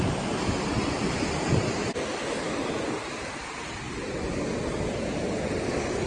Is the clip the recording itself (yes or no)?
yes